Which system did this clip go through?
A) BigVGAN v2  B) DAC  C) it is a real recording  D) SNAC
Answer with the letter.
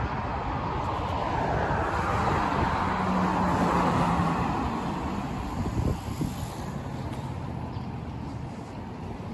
C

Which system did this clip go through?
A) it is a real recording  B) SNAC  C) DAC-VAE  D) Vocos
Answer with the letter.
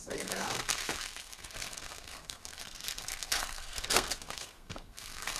B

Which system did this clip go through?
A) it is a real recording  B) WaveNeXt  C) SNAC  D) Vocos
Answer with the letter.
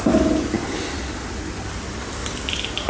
A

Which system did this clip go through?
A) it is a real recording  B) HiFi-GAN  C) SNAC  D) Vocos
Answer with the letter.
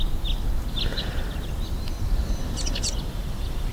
A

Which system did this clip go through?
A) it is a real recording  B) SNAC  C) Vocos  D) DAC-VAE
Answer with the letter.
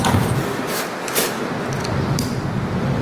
A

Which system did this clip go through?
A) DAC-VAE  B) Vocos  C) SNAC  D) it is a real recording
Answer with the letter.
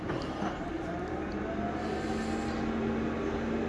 D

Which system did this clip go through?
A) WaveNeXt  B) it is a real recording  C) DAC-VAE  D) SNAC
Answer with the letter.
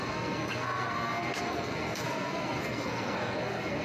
D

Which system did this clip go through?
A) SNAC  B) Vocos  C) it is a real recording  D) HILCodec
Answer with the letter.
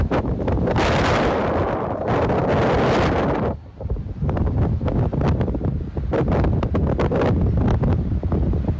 C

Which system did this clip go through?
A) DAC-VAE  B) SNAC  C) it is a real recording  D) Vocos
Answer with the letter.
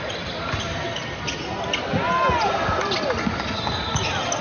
C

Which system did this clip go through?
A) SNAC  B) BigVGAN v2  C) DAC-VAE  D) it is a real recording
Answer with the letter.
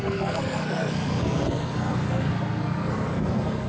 A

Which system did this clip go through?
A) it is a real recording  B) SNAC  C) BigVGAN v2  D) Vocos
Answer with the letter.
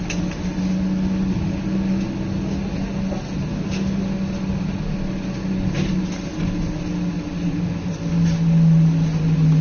A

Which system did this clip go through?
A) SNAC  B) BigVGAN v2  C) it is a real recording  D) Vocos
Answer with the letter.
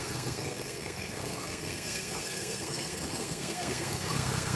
A